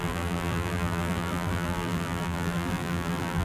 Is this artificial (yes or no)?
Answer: yes